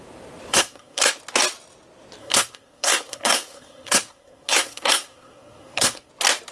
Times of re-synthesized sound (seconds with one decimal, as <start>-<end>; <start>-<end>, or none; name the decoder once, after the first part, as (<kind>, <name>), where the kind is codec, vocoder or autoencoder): 0.5-1.1 (codec, SNAC); 2.2-6.1